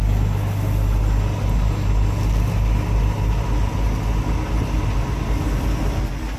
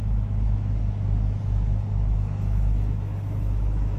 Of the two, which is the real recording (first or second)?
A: first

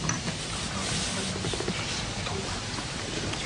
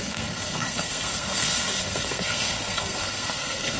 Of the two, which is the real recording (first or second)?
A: first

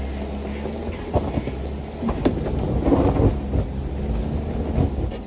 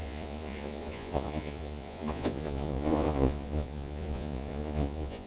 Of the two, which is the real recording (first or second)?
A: first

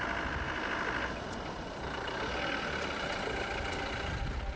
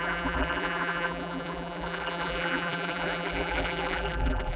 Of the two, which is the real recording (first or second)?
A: first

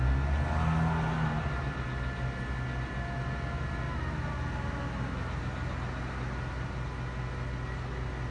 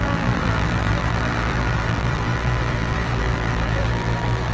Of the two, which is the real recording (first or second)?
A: first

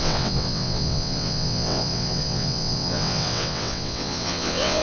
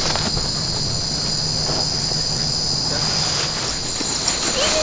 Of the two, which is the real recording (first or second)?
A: second